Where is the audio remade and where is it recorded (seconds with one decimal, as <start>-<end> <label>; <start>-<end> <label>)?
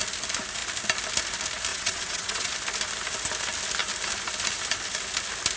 0.0-1.7 recorded; 1.7-2.5 remade; 2.5-5.6 recorded